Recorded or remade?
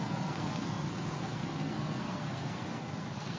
remade